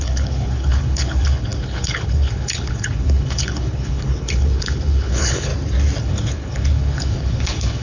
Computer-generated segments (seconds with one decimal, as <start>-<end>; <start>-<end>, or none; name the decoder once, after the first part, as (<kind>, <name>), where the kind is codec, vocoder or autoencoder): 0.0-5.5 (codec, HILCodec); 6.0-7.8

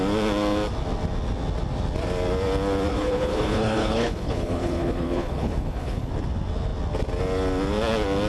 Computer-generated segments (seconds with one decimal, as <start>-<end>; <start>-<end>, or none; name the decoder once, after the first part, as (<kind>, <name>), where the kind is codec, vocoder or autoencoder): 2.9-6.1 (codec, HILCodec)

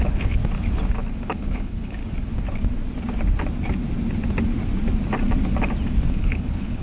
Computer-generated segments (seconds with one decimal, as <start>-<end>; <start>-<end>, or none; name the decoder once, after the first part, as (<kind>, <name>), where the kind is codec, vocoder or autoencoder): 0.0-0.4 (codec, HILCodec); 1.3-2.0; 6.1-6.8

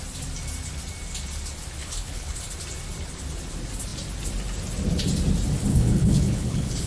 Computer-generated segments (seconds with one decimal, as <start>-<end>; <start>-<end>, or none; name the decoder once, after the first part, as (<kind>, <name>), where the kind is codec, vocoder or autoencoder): 1.8-2.4 (codec, HILCodec); 5.7-6.9

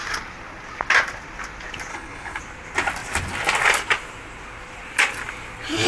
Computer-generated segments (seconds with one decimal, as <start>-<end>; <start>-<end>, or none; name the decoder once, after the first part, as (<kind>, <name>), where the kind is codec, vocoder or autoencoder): 1.9-2.4 (codec, HILCodec)

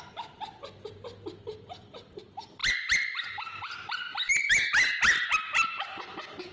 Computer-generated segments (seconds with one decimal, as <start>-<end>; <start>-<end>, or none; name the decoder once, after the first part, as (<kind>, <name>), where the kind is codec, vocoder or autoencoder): none